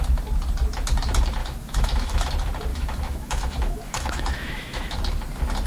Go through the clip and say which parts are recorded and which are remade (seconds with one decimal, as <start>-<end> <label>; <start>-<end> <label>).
0.0-1.4 recorded; 1.4-2.3 remade; 2.3-2.7 recorded; 2.7-5.0 remade; 5.0-5.7 recorded